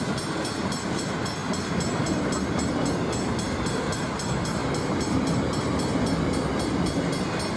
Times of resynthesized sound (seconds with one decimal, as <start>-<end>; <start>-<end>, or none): none